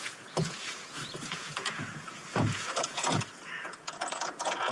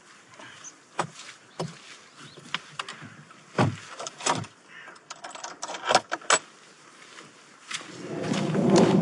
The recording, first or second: second